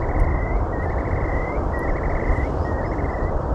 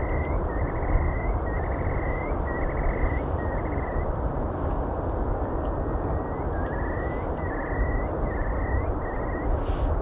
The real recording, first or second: second